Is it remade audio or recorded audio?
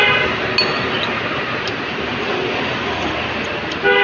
recorded